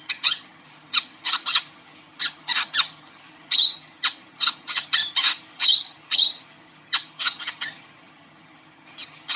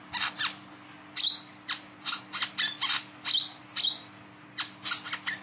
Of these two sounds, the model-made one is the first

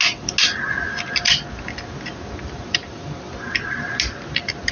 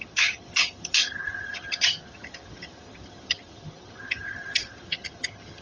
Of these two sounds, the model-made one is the second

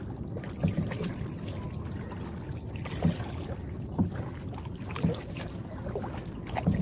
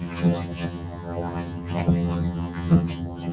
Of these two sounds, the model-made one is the second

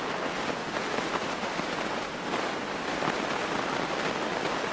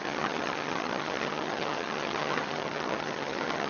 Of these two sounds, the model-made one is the second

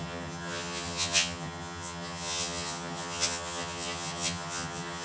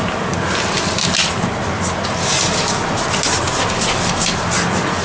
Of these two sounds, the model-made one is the first